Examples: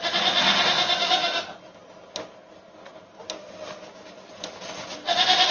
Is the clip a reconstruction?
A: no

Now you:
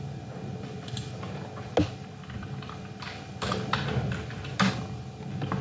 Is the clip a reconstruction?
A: no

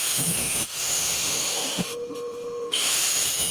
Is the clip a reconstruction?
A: yes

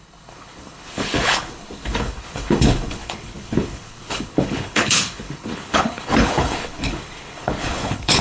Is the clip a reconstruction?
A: yes